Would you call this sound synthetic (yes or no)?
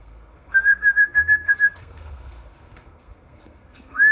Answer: yes